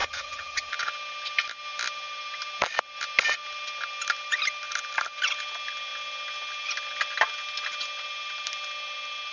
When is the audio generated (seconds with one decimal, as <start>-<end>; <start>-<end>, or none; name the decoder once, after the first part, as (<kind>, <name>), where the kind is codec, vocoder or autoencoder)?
0.0-0.7 (vocoder, HiFi-GAN)